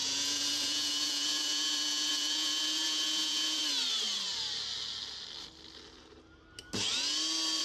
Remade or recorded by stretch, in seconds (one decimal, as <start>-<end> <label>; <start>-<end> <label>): 0.0-3.6 remade; 3.6-7.6 recorded